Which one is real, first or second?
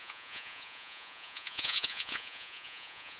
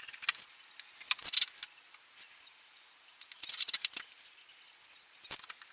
second